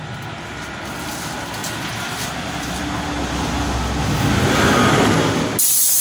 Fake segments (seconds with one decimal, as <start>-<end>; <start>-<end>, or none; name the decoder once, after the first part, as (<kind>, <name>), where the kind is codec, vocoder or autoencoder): none